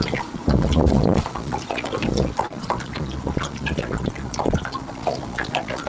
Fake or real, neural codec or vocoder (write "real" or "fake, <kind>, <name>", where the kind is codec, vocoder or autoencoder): fake, vocoder, Vocos